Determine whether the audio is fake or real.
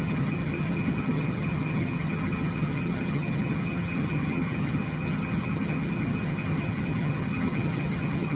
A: fake